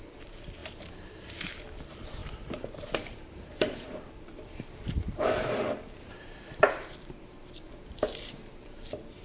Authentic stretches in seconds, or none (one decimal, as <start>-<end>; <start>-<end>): none